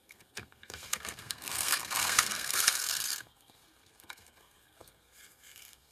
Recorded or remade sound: remade